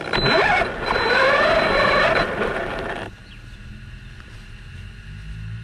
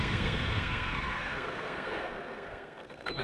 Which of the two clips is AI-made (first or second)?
second